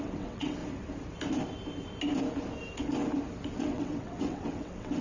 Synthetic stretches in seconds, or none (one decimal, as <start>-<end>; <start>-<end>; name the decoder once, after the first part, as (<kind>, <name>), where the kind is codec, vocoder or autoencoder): 0.0-0.6 (vocoder, WaveNeXt); 3.6-5.0